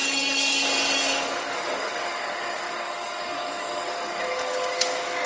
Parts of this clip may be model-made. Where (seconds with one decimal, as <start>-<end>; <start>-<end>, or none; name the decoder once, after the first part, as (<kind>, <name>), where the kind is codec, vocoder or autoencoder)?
0.0-5.3 (codec, DAC)

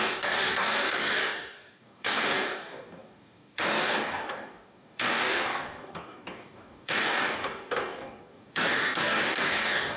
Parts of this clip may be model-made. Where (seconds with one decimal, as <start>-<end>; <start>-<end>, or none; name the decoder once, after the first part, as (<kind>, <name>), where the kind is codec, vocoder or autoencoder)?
0.0-10.0 (codec, DAC)

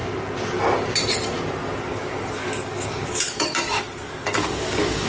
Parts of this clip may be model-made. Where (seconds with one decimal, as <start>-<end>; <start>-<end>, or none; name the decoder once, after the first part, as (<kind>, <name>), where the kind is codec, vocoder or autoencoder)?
1.9-5.1 (codec, DAC)

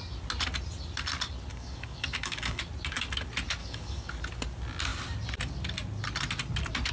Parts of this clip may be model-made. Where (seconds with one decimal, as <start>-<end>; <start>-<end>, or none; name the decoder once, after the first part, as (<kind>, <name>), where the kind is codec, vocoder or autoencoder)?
1.5-2.6 (codec, DAC); 3.6-4.1

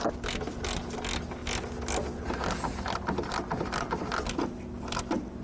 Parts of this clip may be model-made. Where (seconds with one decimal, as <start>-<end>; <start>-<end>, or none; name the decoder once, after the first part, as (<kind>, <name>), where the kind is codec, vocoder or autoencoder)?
none

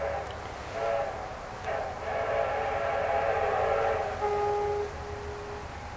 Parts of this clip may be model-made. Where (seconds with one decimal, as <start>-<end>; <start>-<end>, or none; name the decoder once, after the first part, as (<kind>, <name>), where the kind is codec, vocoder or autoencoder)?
none